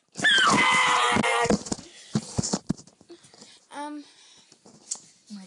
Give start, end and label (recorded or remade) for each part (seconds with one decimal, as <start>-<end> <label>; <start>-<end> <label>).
0.0-5.5 recorded